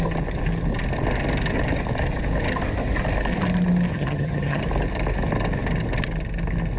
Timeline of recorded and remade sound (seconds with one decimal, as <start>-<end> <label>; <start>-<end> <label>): 0.0-3.9 recorded; 3.9-4.6 remade; 4.6-6.8 recorded

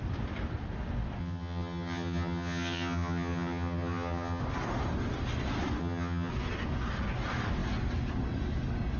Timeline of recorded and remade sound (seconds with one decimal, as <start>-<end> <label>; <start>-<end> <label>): 0.0-1.2 recorded; 1.2-4.4 remade; 4.4-5.8 recorded; 5.8-6.3 remade; 6.3-9.0 recorded

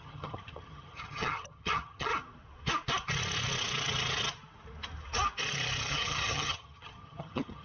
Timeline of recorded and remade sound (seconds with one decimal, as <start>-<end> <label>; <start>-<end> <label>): 0.0-2.1 remade; 2.1-5.9 recorded; 5.9-7.6 remade

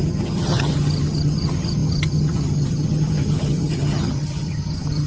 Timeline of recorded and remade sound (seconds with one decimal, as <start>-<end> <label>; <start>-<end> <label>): 0.0-5.1 remade

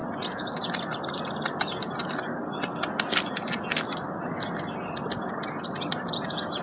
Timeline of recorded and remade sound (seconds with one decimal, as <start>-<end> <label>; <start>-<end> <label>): 0.0-6.6 recorded